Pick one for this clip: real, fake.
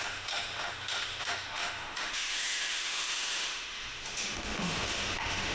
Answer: fake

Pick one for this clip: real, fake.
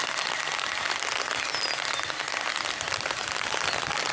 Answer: fake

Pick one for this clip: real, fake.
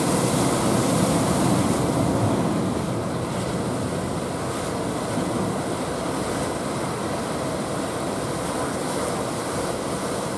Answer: real